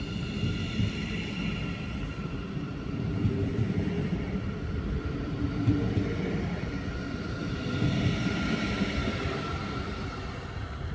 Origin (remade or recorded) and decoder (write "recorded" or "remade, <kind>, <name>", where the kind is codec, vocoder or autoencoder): remade, vocoder, BigVGAN v2